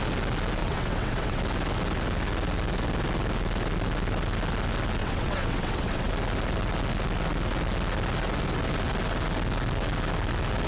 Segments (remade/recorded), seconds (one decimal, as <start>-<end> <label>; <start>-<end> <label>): 0.0-0.6 recorded; 0.6-1.4 remade; 1.4-5.0 recorded; 5.0-6.1 remade; 6.1-10.7 recorded